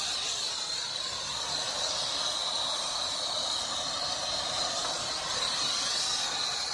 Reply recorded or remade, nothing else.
remade